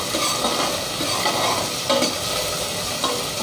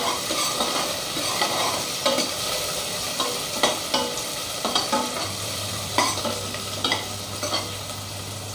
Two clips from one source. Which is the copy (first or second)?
second